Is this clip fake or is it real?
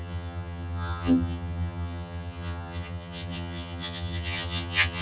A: fake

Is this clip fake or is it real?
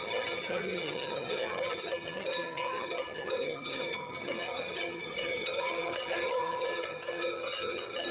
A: fake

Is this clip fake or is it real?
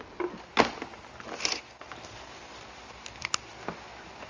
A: real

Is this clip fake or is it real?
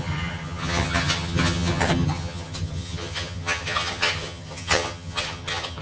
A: fake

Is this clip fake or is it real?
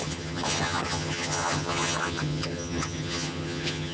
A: fake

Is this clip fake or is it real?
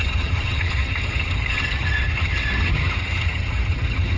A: fake